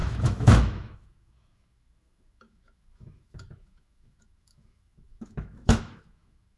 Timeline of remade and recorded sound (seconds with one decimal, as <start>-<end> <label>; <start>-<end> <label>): 0.0-6.6 remade